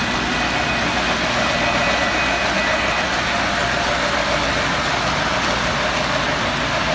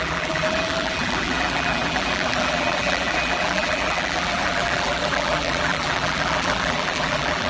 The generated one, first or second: second